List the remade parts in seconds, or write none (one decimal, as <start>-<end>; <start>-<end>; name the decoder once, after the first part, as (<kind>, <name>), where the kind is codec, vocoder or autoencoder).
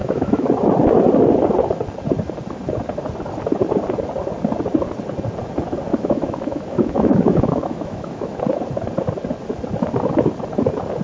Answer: 0.0-0.5 (autoencoder, DAC-VAE); 5.9-8.4